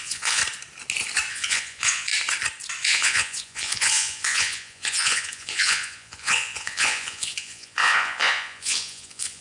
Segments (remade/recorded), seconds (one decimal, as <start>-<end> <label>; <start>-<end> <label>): 0.0-0.4 remade; 0.4-1.3 recorded; 1.3-2.1 remade; 2.1-2.8 recorded; 2.8-9.4 remade